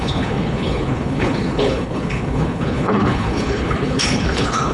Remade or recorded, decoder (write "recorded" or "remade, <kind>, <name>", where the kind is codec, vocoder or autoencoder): remade, codec, HILCodec